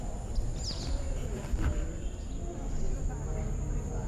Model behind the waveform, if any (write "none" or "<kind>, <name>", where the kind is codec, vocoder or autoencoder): none